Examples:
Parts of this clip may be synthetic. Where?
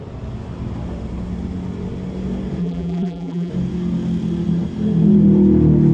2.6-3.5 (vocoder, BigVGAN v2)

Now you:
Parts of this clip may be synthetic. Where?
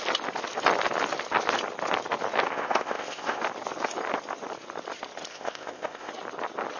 2.5-3.4 (codec, ZipCodec); 5.3-6.1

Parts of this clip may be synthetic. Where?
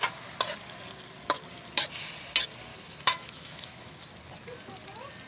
2.7-4.0 (autoencoder, DAC-VAE)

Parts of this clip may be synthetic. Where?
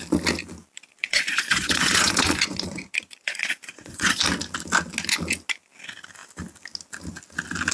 1.0-4.2 (vocoder, Vocos)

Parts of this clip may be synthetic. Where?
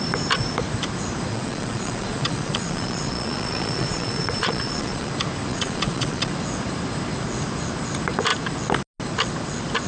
1.3-5.1 (vocoder, Vocos); 5.5-6.3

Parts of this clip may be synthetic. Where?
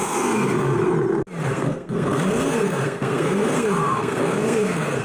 0.0-0.8 (codec, SNAC); 1.4-5.0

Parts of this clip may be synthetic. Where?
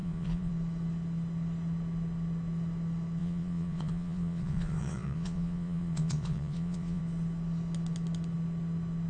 0.0-0.5 (vocoder, Vocos); 3.2-7.0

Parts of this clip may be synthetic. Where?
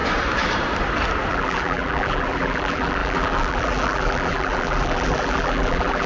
1.3-6.1 (vocoder, BigVGAN v2)